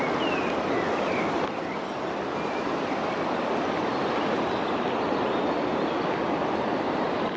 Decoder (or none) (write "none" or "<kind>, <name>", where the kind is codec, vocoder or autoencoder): none